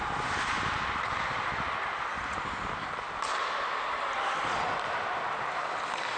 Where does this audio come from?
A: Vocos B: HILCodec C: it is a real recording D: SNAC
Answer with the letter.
C